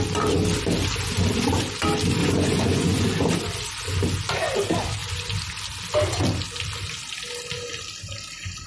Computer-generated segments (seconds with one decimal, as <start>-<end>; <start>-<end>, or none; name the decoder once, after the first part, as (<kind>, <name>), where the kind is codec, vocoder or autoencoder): 2.2-3.1 (vocoder, Vocos)